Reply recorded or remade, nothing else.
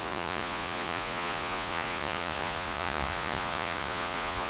remade